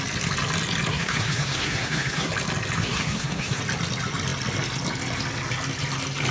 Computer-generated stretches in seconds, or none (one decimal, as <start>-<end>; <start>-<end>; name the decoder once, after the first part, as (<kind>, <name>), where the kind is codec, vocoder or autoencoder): 0.9-2.3 (codec, SNAC); 2.8-3.6

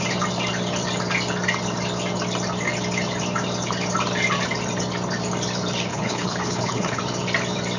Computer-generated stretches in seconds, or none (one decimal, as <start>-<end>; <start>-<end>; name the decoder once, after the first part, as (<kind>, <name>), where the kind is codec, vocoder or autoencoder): 5.9-7.0 (codec, HILCodec)

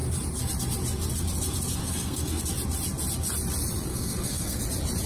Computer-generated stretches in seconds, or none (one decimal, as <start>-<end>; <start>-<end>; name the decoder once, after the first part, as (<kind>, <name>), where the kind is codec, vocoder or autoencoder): 1.8-2.4 (codec, SNAC); 3.9-4.6

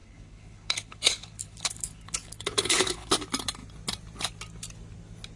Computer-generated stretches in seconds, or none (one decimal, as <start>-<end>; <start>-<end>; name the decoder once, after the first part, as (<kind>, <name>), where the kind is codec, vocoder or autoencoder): 0.0-3.2 (codec, HILCodec)

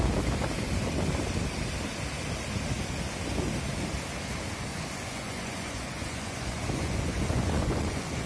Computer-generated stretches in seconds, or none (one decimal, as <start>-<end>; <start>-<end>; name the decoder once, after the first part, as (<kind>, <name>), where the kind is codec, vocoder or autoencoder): 4.7-8.3 (vocoder, Vocos)

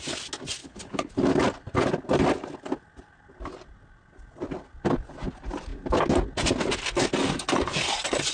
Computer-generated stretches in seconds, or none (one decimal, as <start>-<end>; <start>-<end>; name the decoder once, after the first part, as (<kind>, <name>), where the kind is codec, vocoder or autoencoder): 0.6-1.1 (codec, HILCodec)

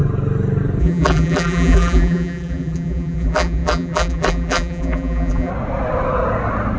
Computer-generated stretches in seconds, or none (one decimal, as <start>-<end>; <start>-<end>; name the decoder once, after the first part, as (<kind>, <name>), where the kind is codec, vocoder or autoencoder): 0.8-5.5 (vocoder, BigVGAN v2)